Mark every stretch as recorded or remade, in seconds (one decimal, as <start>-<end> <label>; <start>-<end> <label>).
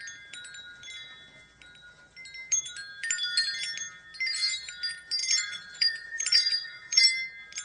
0.0-5.2 recorded; 5.2-7.0 remade; 7.0-7.6 recorded